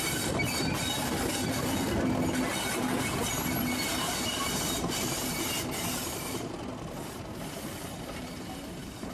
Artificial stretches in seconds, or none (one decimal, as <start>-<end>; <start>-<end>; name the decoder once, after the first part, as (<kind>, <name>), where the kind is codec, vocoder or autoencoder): none